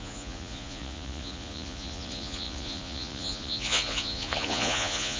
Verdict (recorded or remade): remade